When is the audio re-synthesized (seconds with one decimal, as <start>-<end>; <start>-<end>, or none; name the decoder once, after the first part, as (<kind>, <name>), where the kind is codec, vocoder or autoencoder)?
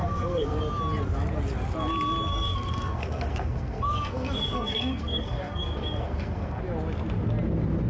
0.0-0.6 (codec, SNAC); 2.3-6.6